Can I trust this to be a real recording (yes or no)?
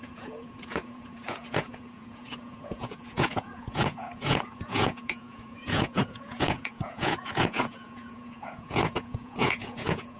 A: no